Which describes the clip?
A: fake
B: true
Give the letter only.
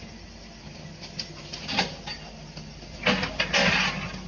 B